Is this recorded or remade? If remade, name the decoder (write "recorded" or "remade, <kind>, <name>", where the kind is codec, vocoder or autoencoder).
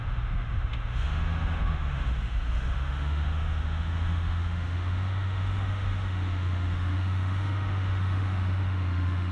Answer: remade, autoencoder, DAC-VAE